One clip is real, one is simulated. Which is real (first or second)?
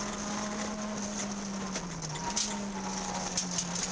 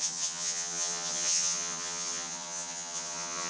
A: first